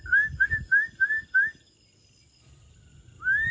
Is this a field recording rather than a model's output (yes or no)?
yes